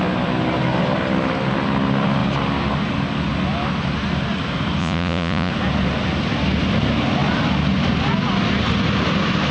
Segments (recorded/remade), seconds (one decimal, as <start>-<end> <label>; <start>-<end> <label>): 0.0-4.8 recorded; 4.8-5.5 remade; 5.5-9.5 recorded